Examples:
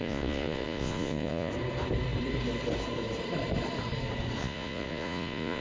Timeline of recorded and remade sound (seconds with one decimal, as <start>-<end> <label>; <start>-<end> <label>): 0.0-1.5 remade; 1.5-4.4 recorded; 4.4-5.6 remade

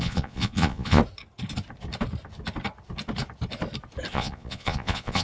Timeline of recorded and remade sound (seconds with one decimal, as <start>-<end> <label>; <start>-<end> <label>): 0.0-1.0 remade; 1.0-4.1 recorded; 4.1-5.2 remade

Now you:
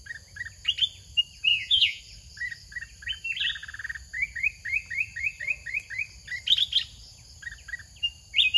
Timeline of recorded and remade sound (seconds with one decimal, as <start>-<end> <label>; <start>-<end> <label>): 0.0-1.5 recorded; 1.5-2.0 remade; 2.0-8.6 recorded

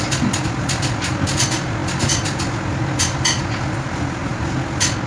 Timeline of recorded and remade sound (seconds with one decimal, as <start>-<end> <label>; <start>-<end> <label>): 0.0-5.1 recorded

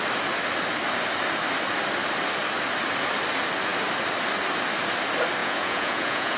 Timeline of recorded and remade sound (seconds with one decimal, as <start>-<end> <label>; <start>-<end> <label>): 0.0-5.4 recorded; 5.4-6.4 remade

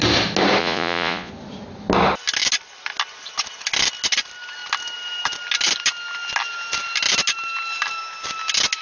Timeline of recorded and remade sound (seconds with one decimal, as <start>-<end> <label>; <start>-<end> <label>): 0.0-0.6 recorded; 0.6-1.3 remade; 1.3-8.8 recorded

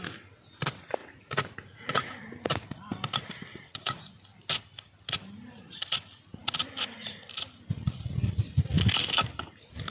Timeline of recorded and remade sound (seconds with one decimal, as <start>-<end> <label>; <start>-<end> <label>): 0.0-1.0 recorded; 1.0-2.1 remade; 2.1-3.5 recorded; 3.5-4.1 remade; 4.1-9.9 recorded